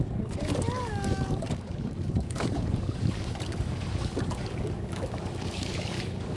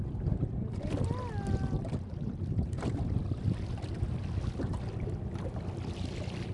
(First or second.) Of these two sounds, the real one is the second